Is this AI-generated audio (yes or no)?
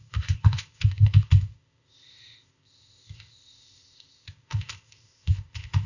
yes